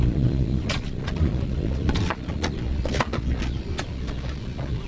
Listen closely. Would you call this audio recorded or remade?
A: remade